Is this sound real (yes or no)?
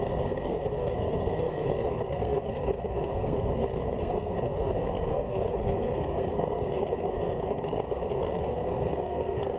no